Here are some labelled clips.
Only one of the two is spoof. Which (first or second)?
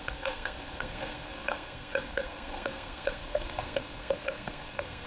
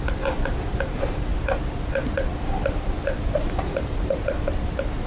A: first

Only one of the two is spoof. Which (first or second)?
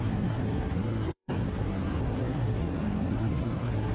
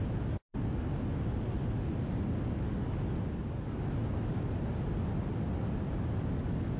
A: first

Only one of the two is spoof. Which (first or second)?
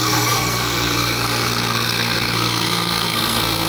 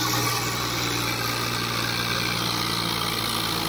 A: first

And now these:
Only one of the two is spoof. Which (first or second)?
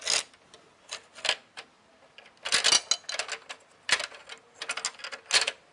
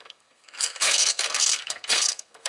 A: second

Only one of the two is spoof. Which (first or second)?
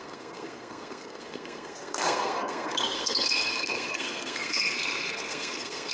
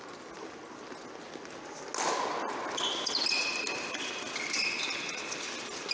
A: first